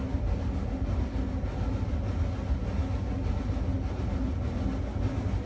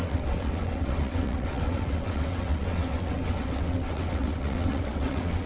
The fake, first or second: second